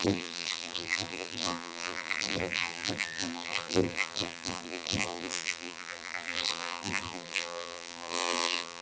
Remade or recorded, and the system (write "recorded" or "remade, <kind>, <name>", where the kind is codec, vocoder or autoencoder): remade, vocoder, BigVGAN v2